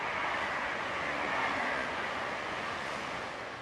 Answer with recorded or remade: remade